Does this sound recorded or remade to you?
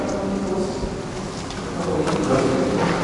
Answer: recorded